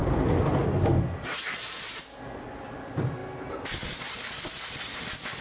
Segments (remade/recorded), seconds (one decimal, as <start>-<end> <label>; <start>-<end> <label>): 0.0-3.2 remade; 3.2-5.0 recorded; 5.0-5.4 remade